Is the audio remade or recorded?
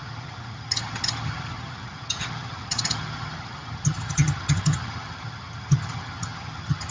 remade